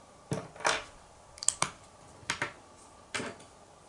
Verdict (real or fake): real